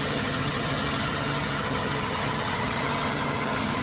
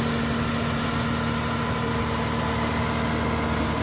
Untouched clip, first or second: second